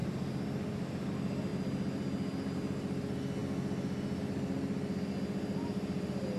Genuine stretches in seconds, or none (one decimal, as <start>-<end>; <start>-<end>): 0.0-6.4